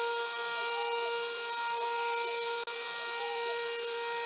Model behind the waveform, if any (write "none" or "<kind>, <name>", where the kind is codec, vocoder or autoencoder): none